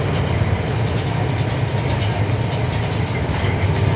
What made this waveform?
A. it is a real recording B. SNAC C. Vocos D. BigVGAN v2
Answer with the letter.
A